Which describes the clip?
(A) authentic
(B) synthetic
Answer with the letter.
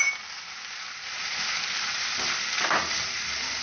A